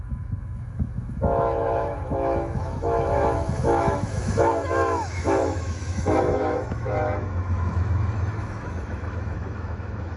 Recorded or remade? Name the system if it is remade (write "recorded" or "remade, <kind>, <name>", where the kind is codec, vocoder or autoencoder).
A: remade, autoencoder, DAC-VAE